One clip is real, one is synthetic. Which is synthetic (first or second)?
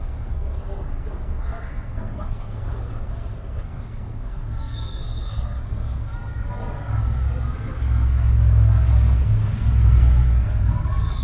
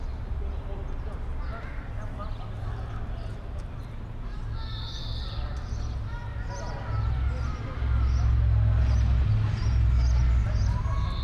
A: first